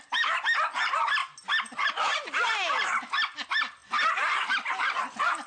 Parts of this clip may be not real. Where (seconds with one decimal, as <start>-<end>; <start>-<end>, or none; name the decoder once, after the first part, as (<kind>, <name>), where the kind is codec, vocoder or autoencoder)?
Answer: 0.0-1.2 (vocoder, BigVGAN v2); 1.9-3.8; 4.5-5.5